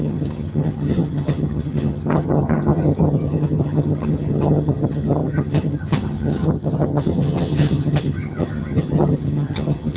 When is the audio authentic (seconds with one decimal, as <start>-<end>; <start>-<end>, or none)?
none